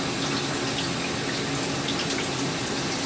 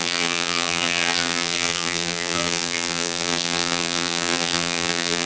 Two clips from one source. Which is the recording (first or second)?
first